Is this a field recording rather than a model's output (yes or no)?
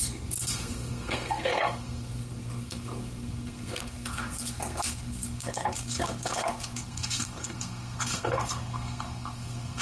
no